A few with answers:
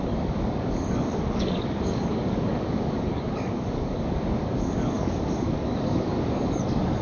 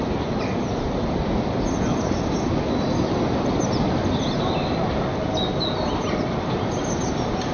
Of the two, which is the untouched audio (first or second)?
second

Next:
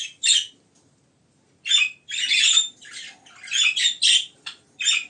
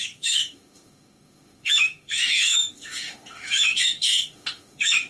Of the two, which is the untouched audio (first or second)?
first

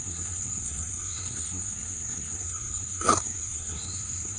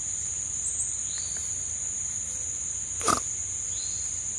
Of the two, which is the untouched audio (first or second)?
second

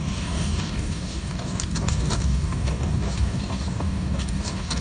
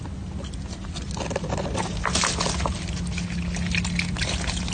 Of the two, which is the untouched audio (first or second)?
second